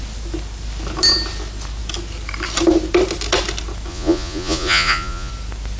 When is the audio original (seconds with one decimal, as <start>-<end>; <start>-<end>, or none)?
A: 0.0-3.9; 5.3-5.8